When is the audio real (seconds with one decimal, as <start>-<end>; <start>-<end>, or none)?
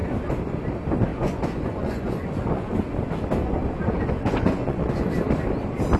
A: 0.0-1.1; 2.7-3.4; 5.1-6.0